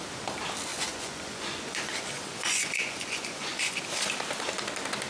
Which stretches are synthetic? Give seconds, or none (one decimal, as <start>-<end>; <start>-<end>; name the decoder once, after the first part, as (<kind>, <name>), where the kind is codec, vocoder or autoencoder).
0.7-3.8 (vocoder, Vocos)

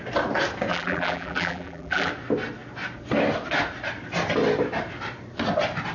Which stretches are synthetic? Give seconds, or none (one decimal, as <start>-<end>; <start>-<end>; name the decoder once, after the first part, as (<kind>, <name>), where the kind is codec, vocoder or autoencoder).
0.7-2.1 (vocoder, BigVGAN v2)

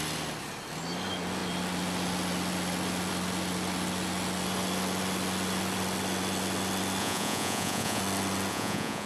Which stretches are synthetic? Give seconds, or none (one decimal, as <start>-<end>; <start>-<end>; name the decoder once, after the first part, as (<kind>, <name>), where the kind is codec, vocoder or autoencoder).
7.0-8.0 (vocoder, Vocos); 8.5-9.1

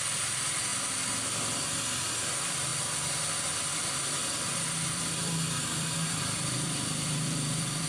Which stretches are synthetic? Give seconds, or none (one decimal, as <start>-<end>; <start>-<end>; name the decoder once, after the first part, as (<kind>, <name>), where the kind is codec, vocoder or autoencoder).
0.0-0.7 (vocoder, BigVGAN v2); 2.0-2.7; 3.8-7.9